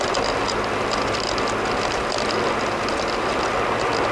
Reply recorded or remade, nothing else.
recorded